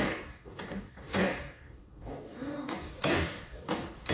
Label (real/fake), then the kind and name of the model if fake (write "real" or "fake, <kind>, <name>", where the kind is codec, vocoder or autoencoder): fake, codec, DAC